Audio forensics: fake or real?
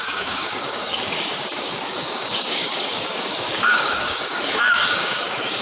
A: fake